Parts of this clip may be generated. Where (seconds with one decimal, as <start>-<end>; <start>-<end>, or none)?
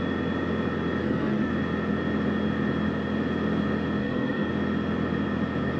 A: 1.0-1.5; 4.0-4.5